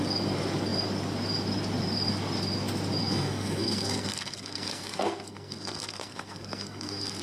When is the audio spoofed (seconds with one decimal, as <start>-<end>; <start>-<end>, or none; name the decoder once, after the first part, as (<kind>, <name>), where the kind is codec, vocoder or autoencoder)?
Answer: 3.0-7.2 (codec, SNAC)